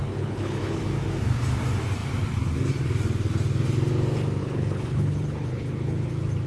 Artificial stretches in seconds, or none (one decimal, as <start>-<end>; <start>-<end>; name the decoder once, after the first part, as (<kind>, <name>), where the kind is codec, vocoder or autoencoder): 0.0-0.8 (codec, HILCodec); 4.4-6.1